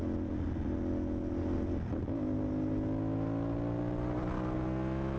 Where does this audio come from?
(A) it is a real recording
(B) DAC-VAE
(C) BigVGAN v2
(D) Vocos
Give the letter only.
A